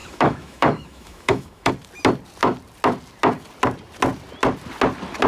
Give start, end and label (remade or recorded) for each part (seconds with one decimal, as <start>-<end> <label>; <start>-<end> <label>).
0.0-1.7 remade; 1.7-5.3 recorded